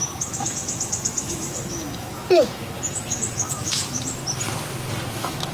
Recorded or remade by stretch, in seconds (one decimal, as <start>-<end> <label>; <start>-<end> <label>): 0.0-4.2 remade; 4.2-5.1 recorded; 5.1-5.5 remade